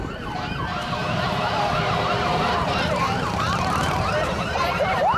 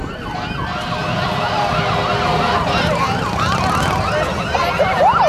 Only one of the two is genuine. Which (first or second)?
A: second